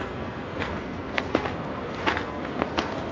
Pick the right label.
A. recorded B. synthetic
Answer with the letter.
B